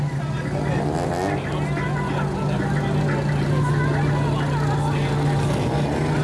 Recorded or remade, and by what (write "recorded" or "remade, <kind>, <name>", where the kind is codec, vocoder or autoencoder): recorded